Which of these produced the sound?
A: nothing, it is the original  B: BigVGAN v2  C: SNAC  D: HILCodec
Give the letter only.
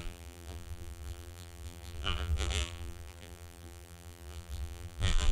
B